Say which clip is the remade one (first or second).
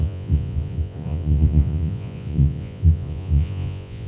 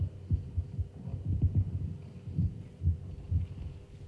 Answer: first